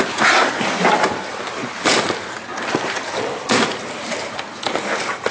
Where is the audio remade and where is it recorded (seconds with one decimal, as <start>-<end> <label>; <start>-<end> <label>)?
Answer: 0.0-5.3 recorded